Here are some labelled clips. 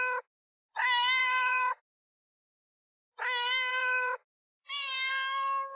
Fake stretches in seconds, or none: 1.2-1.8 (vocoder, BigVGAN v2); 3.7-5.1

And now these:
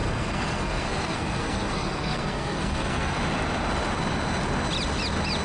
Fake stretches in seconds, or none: 0.0-3.2 (codec, SNAC)

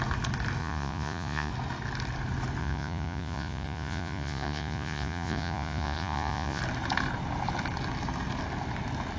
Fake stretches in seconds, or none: 0.6-1.5 (vocoder, Vocos); 2.6-6.6

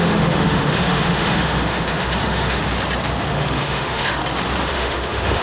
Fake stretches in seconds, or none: 0.0-2.6 (autoencoder, DAC-VAE); 3.3-4.2; 4.7-5.4

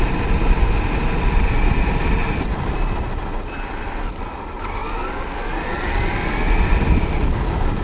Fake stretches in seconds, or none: 2.2-2.9 (vocoder, BigVGAN v2)

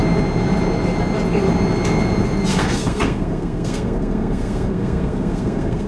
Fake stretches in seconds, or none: 2.5-5.9 (codec, SNAC)

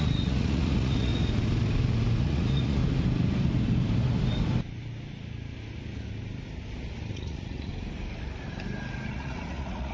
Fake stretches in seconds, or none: 0.0-1.1 (vocoder, Vocos); 2.2-2.8; 7.1-7.7; 9.1-9.9